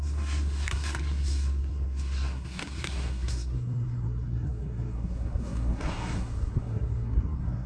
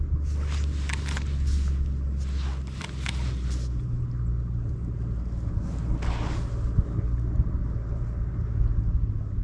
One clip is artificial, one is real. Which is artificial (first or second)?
first